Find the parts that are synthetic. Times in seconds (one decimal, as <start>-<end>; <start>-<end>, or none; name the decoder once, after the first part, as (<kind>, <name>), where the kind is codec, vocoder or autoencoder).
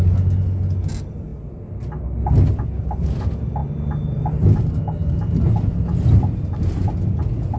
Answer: none